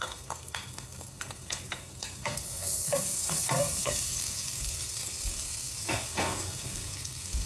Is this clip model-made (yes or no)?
yes